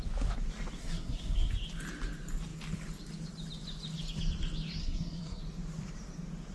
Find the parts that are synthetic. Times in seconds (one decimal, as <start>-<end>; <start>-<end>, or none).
0.8-1.5; 4.8-5.4